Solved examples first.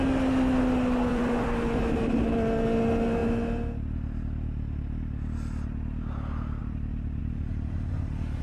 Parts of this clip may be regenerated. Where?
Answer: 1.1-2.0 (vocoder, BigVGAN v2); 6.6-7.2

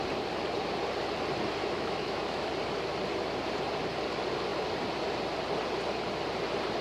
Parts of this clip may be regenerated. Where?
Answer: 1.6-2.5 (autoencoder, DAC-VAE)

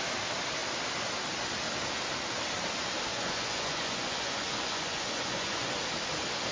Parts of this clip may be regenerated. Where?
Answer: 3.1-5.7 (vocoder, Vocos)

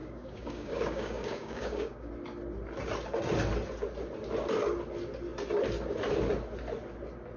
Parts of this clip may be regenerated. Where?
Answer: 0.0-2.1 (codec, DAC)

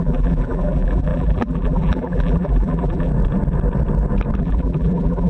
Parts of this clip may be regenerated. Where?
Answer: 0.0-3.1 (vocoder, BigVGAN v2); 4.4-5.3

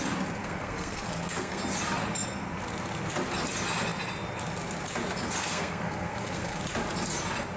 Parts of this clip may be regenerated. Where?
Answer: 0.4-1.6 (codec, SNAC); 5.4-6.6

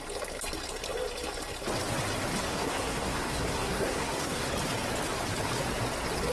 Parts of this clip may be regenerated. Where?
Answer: 2.5-4.5 (codec, SNAC)